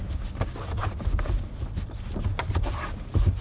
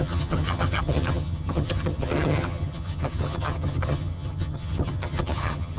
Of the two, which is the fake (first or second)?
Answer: second